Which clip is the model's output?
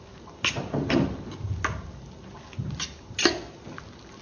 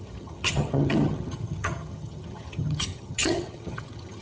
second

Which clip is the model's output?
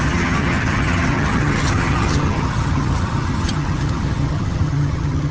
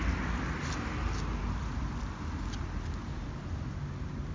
first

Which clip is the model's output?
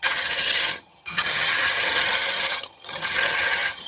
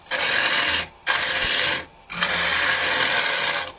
first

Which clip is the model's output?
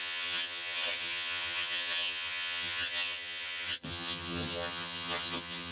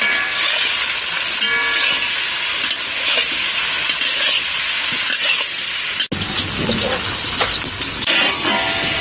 first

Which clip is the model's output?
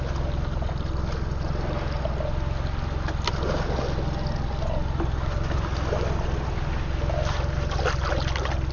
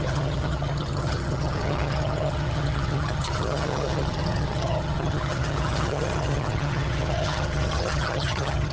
second